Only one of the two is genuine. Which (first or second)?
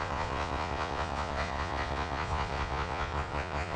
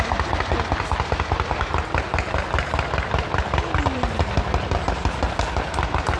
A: second